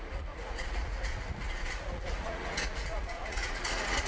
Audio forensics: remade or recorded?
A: remade